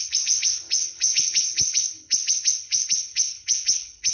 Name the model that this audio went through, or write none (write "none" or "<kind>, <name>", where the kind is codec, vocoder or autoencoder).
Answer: codec, HILCodec